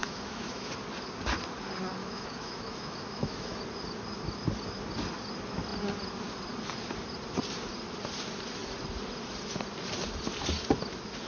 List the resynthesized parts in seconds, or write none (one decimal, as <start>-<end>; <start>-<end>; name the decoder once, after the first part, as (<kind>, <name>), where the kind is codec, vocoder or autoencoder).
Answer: 0.0-0.7 (autoencoder, DAC-VAE); 2.0-3.6

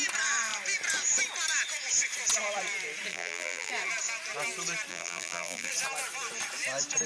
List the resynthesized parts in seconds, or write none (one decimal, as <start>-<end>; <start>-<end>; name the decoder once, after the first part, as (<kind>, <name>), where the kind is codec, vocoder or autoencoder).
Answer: 3.1-3.7 (vocoder, BigVGAN v2); 4.9-5.7

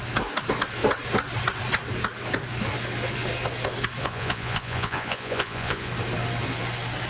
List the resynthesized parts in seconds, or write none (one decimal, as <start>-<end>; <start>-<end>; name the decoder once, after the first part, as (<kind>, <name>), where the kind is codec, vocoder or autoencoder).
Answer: 4.0-5.9 (vocoder, Vocos)